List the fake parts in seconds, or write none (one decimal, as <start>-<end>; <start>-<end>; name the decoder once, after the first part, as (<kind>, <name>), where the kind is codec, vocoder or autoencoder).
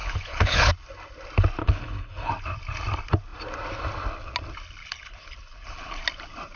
0.0-0.7 (codec, HILCodec); 1.6-2.3; 4.8-6.0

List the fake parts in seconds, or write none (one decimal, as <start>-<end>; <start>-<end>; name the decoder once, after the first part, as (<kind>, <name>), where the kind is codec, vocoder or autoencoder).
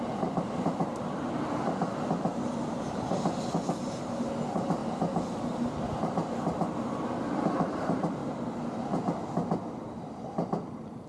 0.0-0.9 (vocoder, BigVGAN v2); 2.3-4.8; 7.2-8.2; 10.7-11.1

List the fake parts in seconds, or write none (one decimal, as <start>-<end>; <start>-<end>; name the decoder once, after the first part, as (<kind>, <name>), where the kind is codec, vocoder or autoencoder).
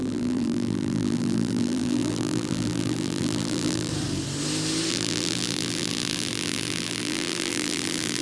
0.0-3.9 (vocoder, BigVGAN v2); 4.9-8.2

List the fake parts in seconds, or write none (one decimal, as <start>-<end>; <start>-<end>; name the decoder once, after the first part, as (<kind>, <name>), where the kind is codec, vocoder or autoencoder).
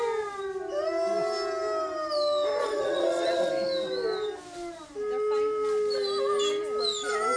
2.6-3.5 (vocoder, Vocos)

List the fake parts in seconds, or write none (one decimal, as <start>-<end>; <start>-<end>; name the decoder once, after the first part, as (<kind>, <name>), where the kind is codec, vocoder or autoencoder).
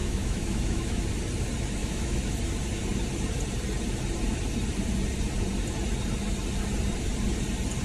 0.0-1.1 (autoencoder, DAC-VAE); 1.8-2.4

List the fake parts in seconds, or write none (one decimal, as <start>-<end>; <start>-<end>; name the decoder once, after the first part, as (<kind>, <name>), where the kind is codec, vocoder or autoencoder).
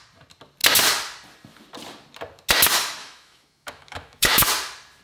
3.0-4.5 (autoencoder, DAC-VAE)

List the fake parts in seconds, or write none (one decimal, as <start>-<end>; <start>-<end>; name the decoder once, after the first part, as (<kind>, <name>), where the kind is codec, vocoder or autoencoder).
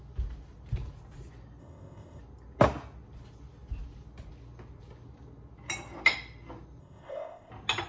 1.6-2.2 (codec, ZipCodec); 6.8-7.5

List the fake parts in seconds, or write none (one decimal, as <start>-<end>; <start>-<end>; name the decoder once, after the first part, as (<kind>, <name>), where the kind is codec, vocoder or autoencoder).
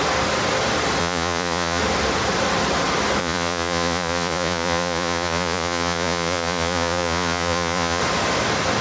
1.0-1.8 (vocoder, Vocos); 3.2-8.0